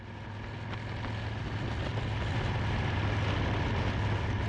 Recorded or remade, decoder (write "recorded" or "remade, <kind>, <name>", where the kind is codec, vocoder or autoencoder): recorded